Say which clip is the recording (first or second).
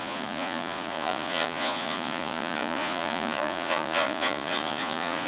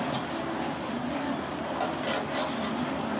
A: second